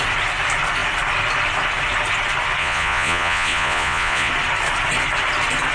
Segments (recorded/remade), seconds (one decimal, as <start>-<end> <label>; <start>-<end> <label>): 0.0-2.6 recorded; 2.6-4.3 remade; 4.3-5.7 recorded